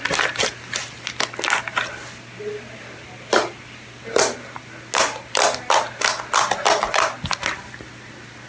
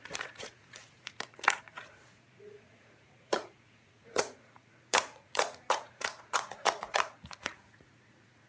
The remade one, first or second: second